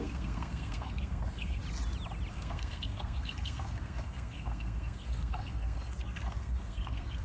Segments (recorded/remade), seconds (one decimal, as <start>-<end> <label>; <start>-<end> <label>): 0.0-1.6 remade; 1.6-2.3 recorded; 2.3-7.2 remade